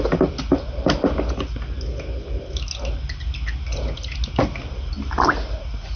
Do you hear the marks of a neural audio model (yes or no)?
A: no